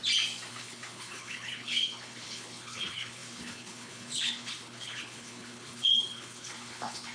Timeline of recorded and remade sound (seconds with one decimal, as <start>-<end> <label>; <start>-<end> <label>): 0.0-0.5 recorded; 0.5-7.1 remade